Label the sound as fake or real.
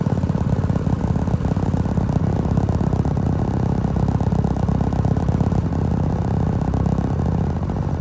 real